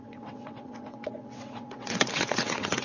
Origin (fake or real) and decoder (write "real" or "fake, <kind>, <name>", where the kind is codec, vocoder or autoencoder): fake, vocoder, WaveNeXt